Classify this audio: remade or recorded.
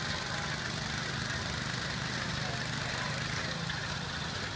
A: recorded